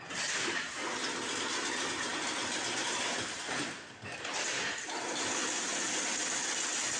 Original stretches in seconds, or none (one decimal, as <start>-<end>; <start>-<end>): 0.0-7.0